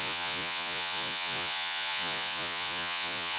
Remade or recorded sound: remade